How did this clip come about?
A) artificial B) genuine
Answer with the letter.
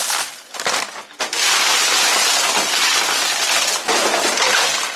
B